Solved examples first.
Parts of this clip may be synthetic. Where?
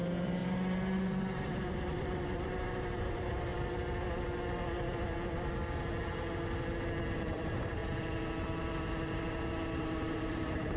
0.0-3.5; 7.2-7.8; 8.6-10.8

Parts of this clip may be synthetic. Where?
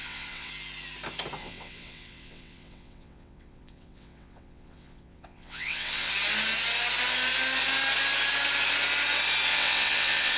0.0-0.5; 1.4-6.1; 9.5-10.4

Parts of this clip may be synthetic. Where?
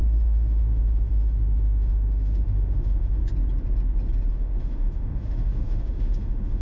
0.0-3.2; 4.3-6.6